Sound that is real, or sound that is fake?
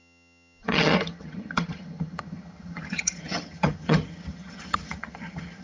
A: fake